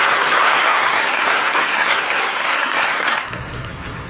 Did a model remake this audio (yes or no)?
yes